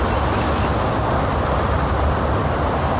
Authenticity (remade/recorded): recorded